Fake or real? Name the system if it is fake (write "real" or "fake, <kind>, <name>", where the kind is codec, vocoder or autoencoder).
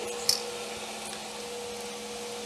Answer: real